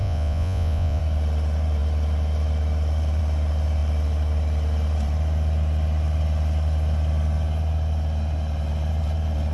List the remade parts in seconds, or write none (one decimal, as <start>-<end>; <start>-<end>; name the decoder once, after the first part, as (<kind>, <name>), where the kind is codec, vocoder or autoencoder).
0.0-1.0 (vocoder, Vocos)